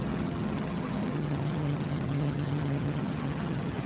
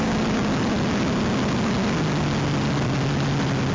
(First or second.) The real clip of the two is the second